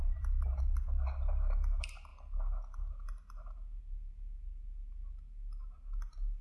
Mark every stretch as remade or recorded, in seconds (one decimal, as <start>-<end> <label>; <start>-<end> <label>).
0.0-0.6 remade; 0.6-6.4 recorded